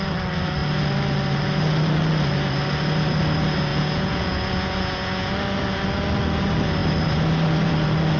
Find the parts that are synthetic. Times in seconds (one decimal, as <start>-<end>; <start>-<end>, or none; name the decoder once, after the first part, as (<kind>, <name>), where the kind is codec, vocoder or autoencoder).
3.7-5.3 (vocoder, Vocos)